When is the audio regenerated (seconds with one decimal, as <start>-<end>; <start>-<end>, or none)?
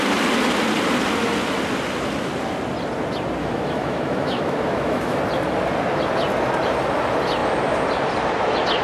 3.4-5.2